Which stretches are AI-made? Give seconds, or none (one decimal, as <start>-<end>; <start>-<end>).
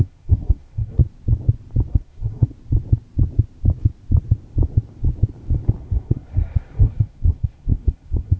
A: 0.0-1.0; 1.9-2.5; 5.8-8.4